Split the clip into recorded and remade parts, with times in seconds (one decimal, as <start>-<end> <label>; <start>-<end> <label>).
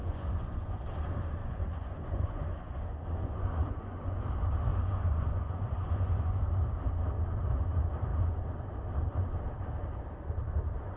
0.0-0.8 remade; 0.8-1.4 recorded; 1.4-4.2 remade; 4.2-4.7 recorded; 4.7-6.4 remade; 6.4-11.0 recorded